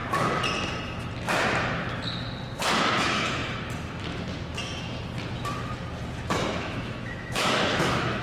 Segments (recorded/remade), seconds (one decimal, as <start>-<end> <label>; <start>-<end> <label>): 0.0-2.8 recorded; 2.8-3.4 remade; 3.4-6.3 recorded; 6.3-8.2 remade